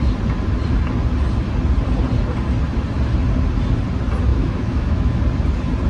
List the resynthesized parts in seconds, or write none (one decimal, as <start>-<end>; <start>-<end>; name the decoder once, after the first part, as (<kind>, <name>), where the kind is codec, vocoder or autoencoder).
4.3-5.2 (autoencoder, DAC-VAE)